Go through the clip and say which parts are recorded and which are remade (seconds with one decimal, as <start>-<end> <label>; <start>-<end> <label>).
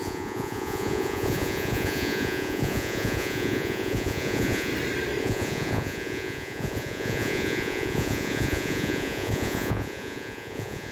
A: 0.0-4.7 remade; 4.7-5.2 recorded; 5.2-10.9 remade